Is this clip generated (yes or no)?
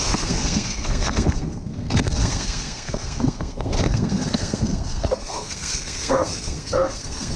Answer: yes